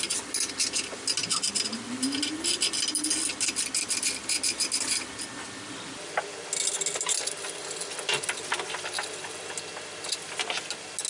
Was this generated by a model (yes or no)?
no